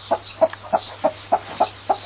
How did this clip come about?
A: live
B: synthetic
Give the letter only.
A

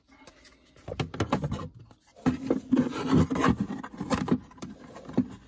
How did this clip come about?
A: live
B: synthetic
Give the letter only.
A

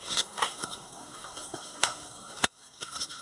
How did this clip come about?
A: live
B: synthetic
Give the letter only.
B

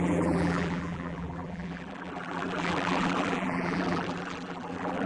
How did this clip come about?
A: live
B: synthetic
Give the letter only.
B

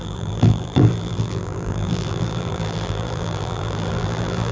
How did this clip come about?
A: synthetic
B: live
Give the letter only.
A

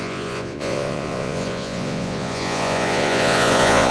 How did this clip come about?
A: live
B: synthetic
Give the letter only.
B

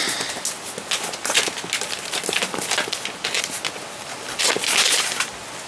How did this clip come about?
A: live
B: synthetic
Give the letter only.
A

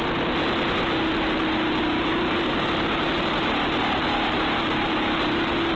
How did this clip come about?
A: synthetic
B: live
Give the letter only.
B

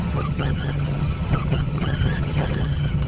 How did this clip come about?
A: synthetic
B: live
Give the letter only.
A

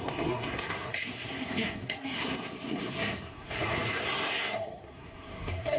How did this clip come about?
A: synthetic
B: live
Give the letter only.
A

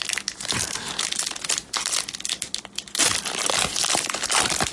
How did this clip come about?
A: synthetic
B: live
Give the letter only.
B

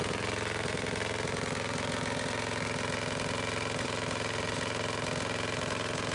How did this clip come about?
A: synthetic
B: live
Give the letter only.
B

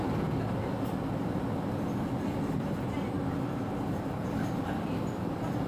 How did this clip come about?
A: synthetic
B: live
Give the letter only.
B